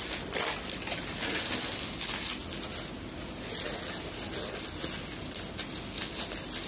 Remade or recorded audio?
recorded